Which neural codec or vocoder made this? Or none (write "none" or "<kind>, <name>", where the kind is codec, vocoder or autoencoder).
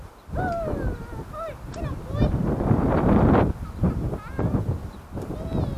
none